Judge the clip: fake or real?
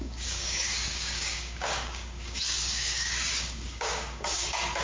fake